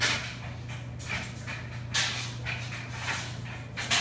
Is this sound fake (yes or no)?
no